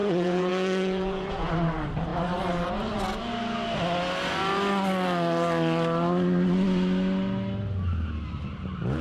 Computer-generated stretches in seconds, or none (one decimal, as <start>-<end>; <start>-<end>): 0.0-1.5